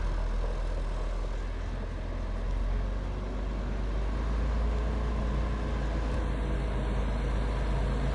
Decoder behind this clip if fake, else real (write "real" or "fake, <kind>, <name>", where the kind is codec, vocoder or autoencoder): real